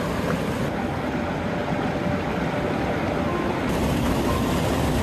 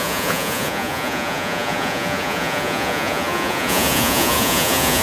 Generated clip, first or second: second